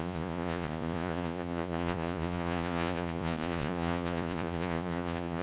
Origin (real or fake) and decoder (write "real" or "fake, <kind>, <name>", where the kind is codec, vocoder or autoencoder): fake, vocoder, Vocos